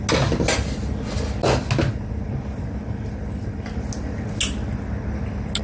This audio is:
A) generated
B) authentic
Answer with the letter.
B